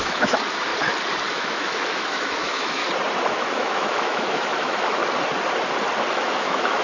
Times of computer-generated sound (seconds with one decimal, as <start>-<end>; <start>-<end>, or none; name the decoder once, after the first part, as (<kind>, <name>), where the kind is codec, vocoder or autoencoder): 0.0-0.7 (autoencoder, DAC-VAE); 1.3-2.8; 3.3-5.0; 6.1-6.8